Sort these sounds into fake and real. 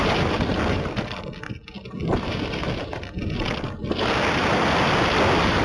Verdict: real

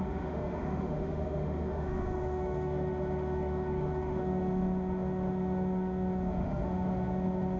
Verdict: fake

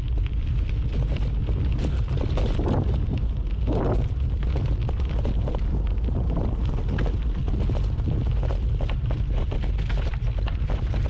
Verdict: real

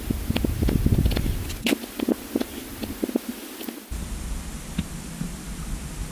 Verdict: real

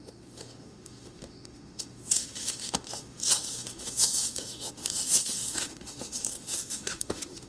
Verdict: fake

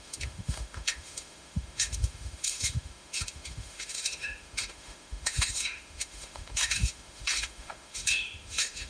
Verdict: fake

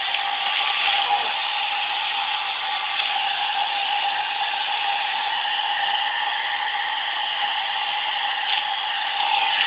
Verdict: real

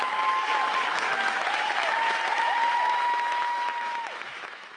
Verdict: fake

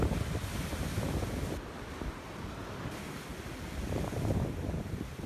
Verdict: real